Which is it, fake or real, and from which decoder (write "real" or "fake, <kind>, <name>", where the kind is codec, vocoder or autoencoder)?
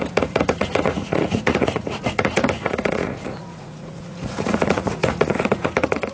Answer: fake, vocoder, Vocos